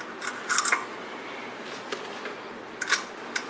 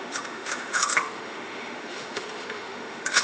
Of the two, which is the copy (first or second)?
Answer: second